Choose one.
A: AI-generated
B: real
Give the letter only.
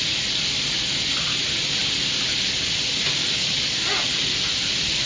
B